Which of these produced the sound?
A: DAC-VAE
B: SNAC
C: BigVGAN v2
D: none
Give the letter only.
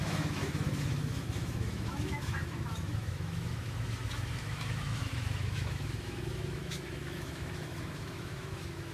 A